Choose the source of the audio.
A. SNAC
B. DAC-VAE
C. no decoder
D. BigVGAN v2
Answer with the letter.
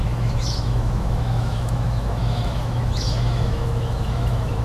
B